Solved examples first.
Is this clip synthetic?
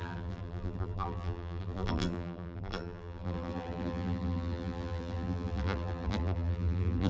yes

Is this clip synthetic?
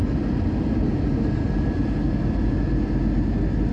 no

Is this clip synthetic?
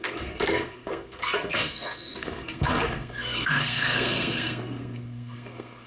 yes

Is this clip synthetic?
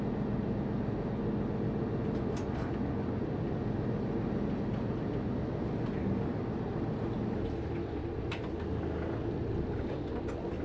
no